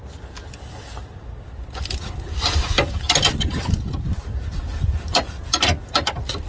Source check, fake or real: real